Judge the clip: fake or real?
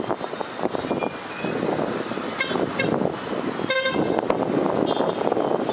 real